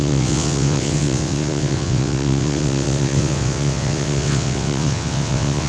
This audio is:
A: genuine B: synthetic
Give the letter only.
B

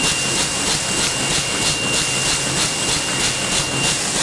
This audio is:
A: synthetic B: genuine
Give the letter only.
B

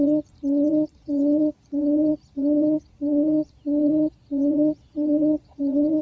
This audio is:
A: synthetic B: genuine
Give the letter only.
A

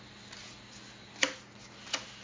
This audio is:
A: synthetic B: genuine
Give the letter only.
B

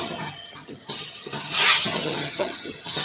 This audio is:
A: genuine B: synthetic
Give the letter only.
B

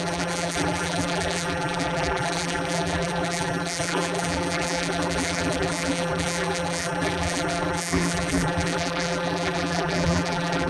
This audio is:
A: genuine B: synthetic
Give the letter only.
B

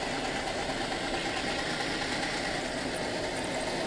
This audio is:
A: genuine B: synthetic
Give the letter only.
A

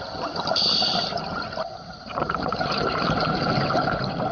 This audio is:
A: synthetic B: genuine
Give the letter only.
B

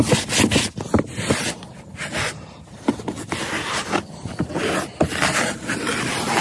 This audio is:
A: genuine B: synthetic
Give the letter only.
A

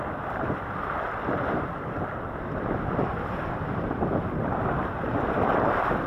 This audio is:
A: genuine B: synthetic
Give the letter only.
B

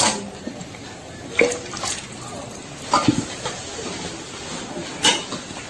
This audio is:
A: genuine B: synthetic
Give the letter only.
A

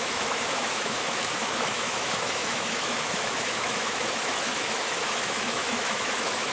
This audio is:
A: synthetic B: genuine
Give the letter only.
A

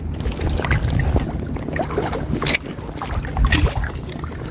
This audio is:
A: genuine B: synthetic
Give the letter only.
A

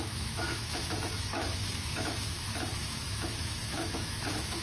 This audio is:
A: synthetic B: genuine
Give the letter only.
A